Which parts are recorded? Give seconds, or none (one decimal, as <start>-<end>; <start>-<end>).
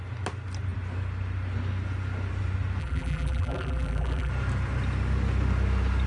0.0-2.8; 4.3-6.1